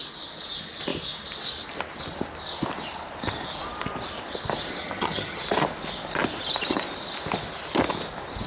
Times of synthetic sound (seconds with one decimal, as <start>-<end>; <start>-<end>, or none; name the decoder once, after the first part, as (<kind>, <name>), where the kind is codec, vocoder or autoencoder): 4.8-5.4 (vocoder, HiFi-GAN)